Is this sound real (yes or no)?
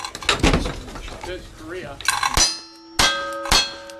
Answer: yes